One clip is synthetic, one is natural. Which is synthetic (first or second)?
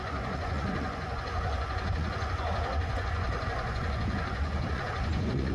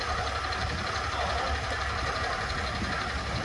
first